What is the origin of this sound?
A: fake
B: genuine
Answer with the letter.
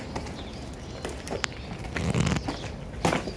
B